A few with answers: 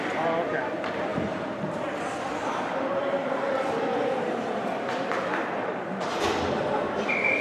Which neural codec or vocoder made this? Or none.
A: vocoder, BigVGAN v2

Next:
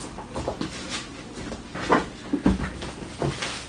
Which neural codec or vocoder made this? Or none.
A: none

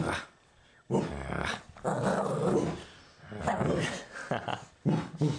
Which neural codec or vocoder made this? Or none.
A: none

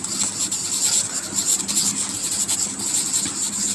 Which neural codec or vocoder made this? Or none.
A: none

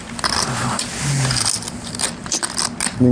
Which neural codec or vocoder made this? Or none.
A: none